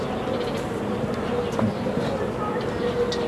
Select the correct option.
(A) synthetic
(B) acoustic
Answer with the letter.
B